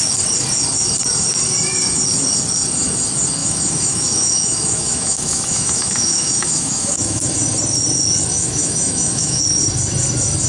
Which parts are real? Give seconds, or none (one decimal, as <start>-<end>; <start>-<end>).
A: 0.0-3.4; 7.3-8.3; 9.4-10.5